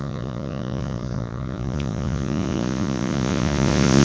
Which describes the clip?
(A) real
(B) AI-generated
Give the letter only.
B